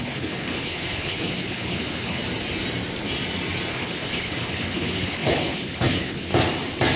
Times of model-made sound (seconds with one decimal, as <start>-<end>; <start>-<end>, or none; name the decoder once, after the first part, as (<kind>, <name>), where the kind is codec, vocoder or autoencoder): 0.0-2.2 (codec, HILCodec); 3.7-6.3